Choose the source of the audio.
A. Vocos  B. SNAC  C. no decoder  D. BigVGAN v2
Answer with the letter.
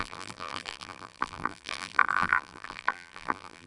D